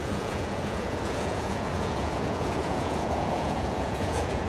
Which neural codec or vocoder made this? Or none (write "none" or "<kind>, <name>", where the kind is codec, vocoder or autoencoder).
vocoder, Vocos